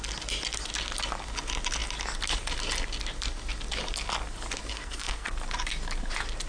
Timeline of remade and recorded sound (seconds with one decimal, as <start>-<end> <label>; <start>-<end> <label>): 0.0-4.7 recorded; 4.7-5.3 remade; 5.3-6.5 recorded